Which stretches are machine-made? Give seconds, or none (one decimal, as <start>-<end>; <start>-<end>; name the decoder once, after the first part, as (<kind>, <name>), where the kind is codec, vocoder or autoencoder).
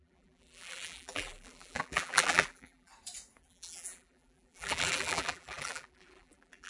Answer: 0.0-2.9 (vocoder, BigVGAN v2); 3.4-6.7